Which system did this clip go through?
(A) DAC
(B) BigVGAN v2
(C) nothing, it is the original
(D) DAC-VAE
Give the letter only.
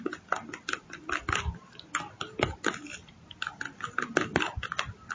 C